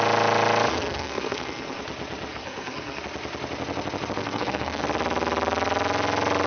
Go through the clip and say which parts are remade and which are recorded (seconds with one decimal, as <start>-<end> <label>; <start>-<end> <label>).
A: 0.0-0.7 recorded; 0.7-1.8 remade; 1.8-2.3 recorded; 2.3-3.0 remade; 3.0-4.2 recorded; 4.2-4.8 remade; 4.8-6.5 recorded